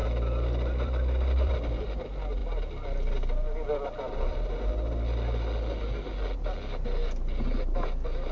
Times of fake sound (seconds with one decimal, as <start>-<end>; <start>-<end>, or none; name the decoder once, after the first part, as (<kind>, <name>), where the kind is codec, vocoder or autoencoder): 0.0-2.0 (vocoder, BigVGAN v2)